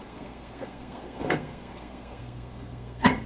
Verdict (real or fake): fake